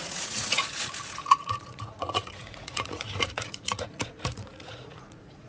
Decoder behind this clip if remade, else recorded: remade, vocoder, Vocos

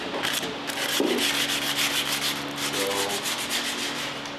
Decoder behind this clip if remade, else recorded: recorded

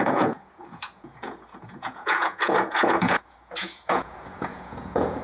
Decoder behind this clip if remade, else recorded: remade, vocoder, Vocos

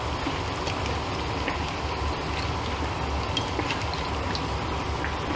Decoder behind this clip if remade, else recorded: recorded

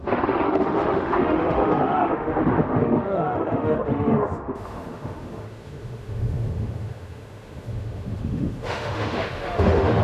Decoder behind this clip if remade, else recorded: remade, autoencoder, DAC-VAE